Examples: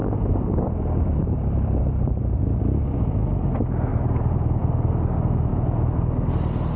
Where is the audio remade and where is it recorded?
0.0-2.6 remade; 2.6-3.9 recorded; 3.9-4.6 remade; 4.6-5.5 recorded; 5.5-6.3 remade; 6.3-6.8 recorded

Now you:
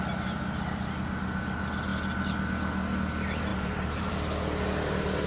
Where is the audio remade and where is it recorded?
0.0-3.5 recorded; 3.5-4.1 remade; 4.1-5.3 recorded

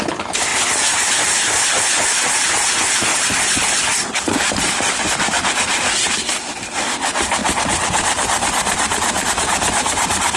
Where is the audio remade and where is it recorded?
0.0-0.5 recorded; 0.5-1.8 remade; 1.8-3.1 recorded; 3.1-6.4 remade; 6.4-7.4 recorded; 7.4-9.3 remade; 9.3-10.4 recorded

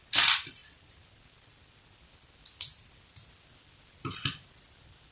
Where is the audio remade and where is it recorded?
0.0-0.6 remade; 0.6-3.7 recorded; 3.7-5.1 remade

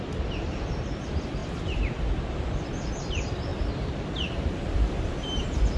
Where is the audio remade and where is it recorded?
0.0-3.5 remade; 3.5-4.4 recorded; 4.4-5.8 remade

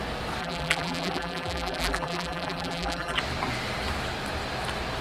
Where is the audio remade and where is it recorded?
0.0-0.4 recorded; 0.4-3.2 remade; 3.2-5.0 recorded

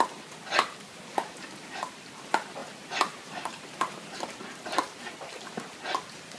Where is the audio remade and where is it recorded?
0.0-2.6 recorded; 2.6-5.0 remade; 5.0-6.4 recorded

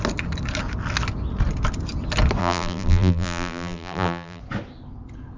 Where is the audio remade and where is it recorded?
0.0-2.4 recorded; 2.4-4.4 remade; 4.4-5.4 recorded